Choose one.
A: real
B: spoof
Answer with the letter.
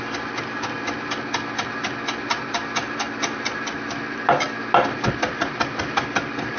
A